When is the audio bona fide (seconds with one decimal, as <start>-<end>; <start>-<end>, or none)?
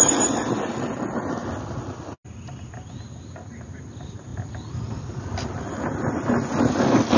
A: 0.0-7.2